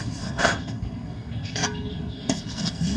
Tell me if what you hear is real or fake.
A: fake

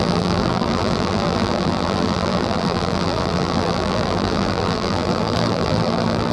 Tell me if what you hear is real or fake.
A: fake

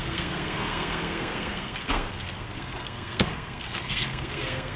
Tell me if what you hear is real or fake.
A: fake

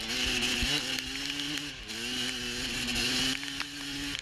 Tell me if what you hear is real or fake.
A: real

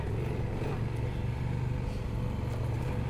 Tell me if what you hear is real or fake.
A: real